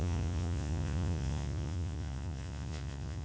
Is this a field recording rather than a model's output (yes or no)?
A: no